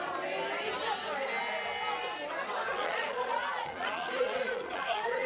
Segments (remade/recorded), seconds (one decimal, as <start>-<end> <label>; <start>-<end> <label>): 0.0-2.7 recorded; 2.7-5.3 remade